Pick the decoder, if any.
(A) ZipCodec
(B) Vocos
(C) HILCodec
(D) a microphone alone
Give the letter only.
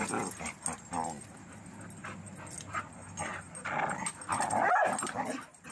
D